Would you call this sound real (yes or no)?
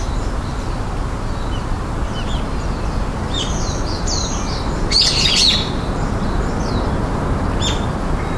yes